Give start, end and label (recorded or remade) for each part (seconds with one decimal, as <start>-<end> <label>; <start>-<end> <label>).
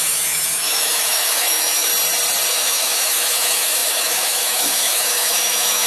0.0-1.9 remade; 1.9-2.5 recorded; 2.5-5.9 remade